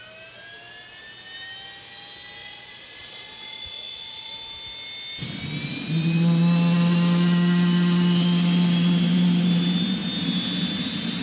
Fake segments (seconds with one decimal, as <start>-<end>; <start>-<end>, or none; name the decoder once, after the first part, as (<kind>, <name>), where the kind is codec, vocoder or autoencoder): 2.4-4.3 (vocoder, Vocos)